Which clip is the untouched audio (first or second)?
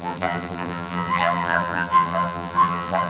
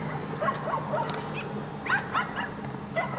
second